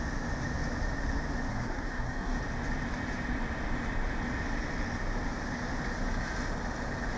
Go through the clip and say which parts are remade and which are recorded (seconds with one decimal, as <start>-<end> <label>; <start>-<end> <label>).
0.0-1.5 recorded; 1.5-2.4 remade; 2.4-7.2 recorded